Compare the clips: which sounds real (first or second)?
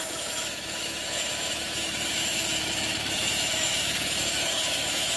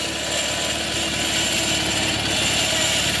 second